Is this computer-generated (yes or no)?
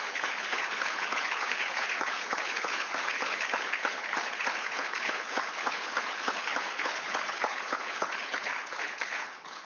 yes